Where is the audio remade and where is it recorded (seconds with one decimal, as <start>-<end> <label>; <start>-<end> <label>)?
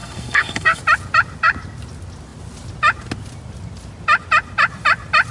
0.0-0.8 remade; 0.8-5.3 recorded